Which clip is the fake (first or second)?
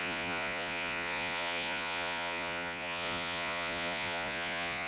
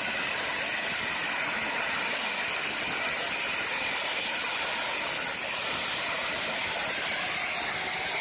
first